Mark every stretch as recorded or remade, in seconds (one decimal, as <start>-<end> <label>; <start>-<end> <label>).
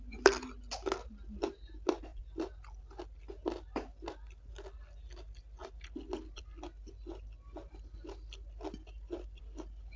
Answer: 0.0-10.0 recorded